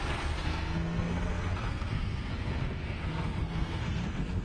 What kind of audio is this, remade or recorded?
remade